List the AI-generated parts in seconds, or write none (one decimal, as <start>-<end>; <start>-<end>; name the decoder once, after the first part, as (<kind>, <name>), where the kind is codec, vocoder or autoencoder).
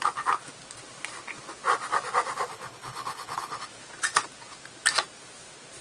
2.5-3.7 (codec, HILCodec)